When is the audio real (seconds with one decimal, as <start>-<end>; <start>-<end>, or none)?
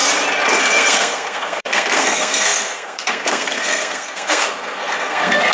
0.0-0.6